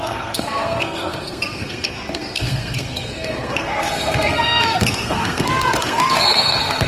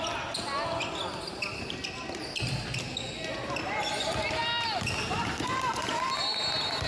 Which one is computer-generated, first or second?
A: first